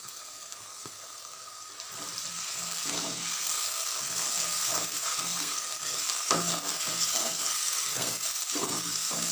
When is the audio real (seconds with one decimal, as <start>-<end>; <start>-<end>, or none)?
1.7-2.3